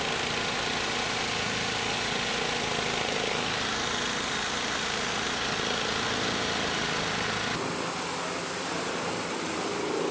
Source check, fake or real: real